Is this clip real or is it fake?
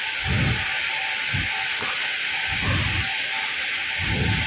real